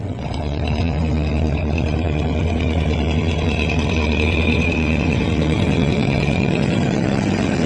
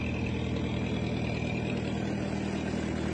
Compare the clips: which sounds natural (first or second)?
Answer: second